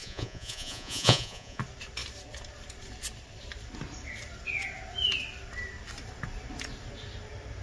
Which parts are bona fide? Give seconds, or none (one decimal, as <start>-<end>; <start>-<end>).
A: 1.6-7.6